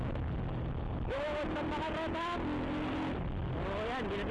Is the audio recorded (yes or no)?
yes